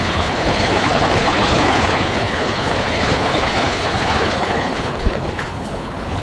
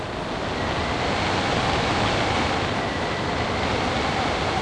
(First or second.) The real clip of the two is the second